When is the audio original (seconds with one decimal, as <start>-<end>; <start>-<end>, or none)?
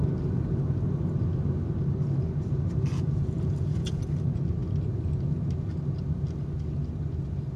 0.0-2.9; 4.0-7.6